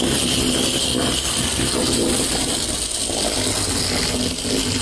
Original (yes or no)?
yes